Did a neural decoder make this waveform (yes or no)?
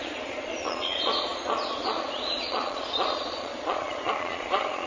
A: yes